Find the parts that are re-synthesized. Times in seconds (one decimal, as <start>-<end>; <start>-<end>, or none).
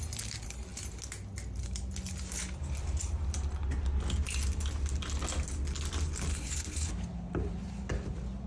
6.3-6.9